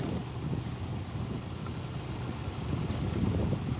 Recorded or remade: recorded